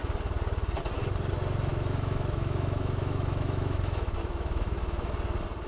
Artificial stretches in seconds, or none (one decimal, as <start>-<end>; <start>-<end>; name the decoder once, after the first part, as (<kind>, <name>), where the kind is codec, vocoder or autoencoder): 1.7-5.1 (autoencoder, DAC-VAE)